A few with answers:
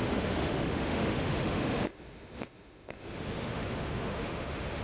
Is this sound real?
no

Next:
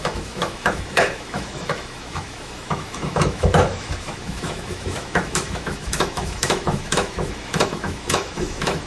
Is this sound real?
no